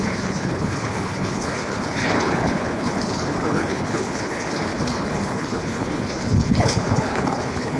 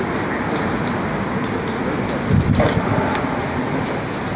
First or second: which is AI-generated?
first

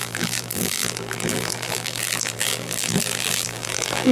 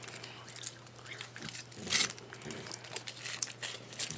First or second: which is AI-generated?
first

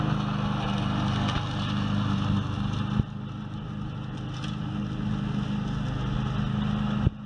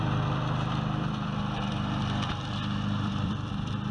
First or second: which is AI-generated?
second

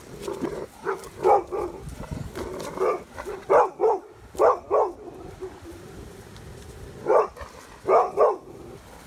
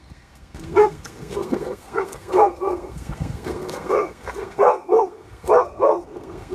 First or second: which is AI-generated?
second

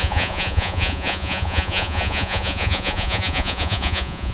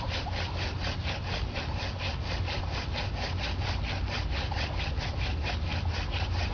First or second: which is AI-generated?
first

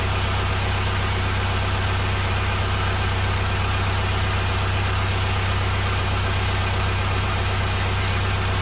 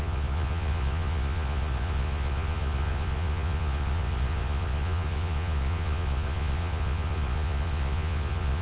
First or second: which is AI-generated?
second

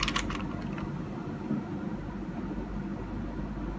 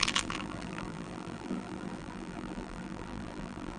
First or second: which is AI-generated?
second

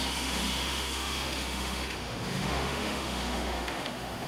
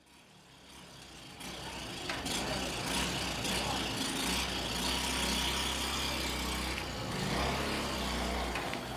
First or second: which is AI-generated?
first